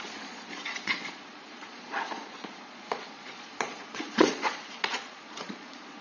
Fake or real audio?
fake